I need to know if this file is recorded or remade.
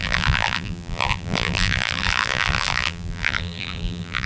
remade